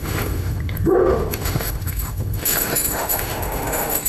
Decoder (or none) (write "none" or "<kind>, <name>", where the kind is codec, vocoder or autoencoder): autoencoder, DAC-VAE